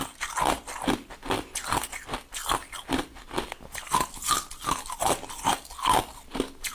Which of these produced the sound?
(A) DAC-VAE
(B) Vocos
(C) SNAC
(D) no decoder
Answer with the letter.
D